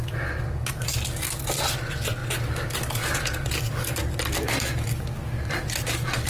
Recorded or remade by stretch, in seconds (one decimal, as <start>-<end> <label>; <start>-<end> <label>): 0.0-6.3 recorded